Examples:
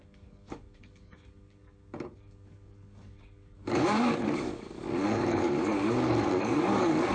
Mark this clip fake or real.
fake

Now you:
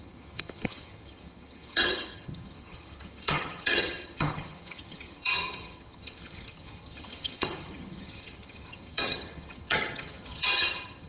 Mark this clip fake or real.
fake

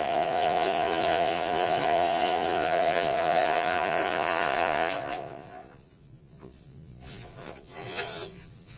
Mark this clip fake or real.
fake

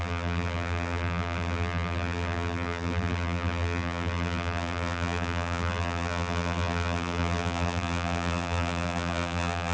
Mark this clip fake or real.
fake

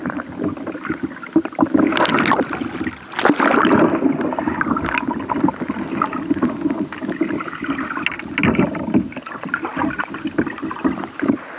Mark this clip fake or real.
real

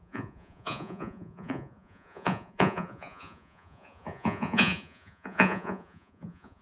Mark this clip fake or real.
fake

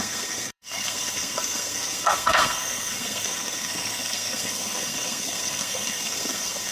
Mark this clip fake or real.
fake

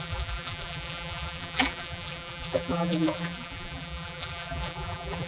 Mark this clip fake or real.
fake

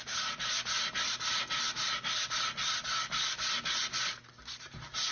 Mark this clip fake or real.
real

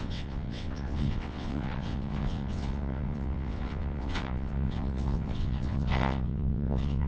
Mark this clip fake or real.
fake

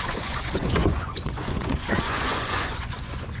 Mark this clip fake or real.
fake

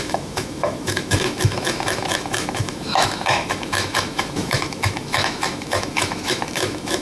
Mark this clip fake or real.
fake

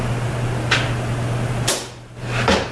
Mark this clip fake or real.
real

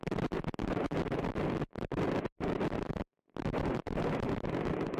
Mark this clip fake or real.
real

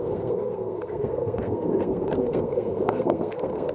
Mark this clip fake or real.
fake